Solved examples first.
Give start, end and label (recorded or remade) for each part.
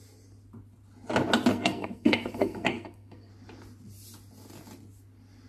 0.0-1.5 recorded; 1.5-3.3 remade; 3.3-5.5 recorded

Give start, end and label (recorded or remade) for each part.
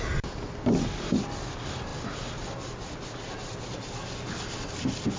0.0-5.2 recorded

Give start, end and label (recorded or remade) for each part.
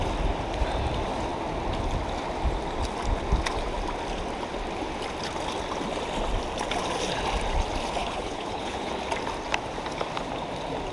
0.0-8.0 recorded; 8.0-8.9 remade; 8.9-10.9 recorded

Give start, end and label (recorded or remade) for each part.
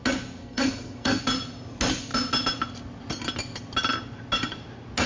0.0-0.4 recorded; 0.4-1.2 remade; 1.2-5.1 recorded